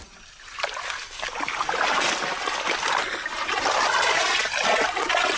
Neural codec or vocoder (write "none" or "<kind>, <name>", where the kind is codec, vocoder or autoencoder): none